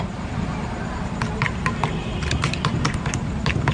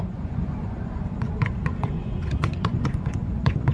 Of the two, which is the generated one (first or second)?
second